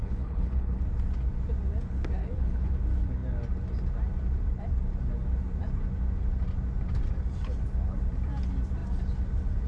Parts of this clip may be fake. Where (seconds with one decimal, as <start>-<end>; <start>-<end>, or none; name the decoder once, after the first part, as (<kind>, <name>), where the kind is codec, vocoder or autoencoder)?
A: 0.0-0.8 (codec, HILCodec); 2.2-2.7